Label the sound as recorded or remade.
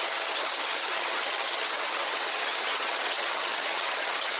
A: remade